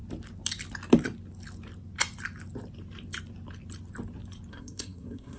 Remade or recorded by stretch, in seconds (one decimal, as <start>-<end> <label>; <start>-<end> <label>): 0.0-4.5 recorded; 4.5-5.4 remade